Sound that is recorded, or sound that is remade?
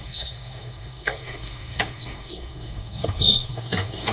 remade